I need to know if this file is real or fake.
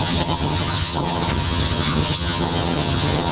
fake